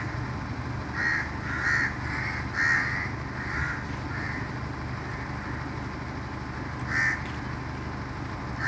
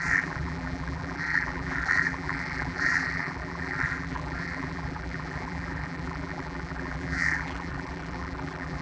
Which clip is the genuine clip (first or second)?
first